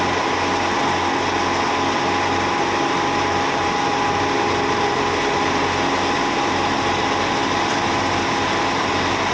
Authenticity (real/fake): real